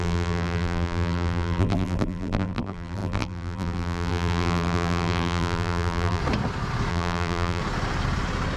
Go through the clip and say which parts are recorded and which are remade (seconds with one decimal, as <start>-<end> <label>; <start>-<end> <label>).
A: 0.0-6.2 remade; 6.2-6.9 recorded; 6.9-7.6 remade; 7.6-8.6 recorded